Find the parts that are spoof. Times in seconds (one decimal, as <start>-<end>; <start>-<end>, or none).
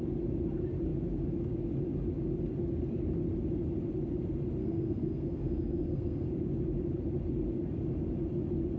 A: 4.6-6.3